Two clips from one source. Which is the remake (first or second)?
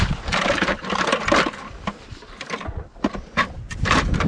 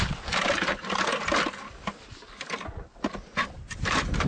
first